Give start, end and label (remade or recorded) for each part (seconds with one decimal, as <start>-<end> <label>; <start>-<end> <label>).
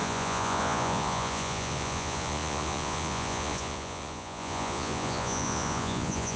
0.0-6.4 remade